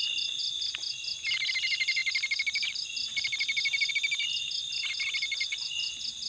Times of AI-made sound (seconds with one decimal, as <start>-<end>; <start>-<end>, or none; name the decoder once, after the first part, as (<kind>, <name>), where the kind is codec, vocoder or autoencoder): none